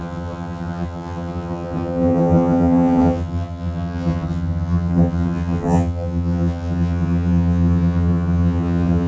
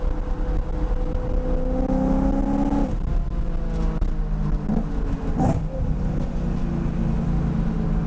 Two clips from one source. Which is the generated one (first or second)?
first